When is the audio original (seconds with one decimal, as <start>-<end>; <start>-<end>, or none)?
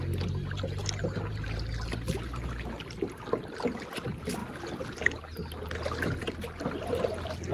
0.0-7.5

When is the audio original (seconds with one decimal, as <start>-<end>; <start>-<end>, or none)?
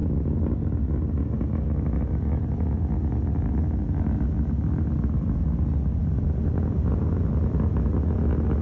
0.0-6.0; 7.2-8.6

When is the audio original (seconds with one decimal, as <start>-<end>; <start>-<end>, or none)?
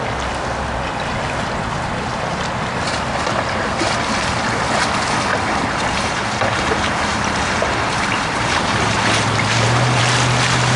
0.0-5.3; 10.0-10.8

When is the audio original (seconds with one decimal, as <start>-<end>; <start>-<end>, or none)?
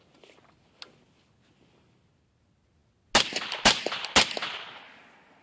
0.0-5.4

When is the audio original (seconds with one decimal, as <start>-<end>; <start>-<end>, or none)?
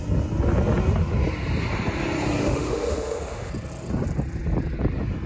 0.0-2.4; 3.5-5.3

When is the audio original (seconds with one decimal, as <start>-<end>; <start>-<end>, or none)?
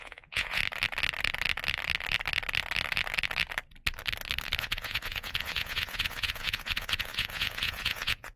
0.6-4.6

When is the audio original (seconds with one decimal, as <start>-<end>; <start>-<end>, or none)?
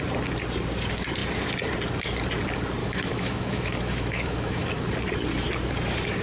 0.0-2.8; 4.7-6.2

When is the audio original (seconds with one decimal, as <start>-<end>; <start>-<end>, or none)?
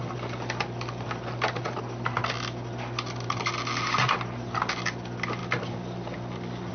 0.0-6.7